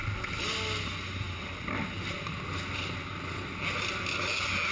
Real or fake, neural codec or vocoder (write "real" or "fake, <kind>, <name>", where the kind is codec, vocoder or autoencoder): real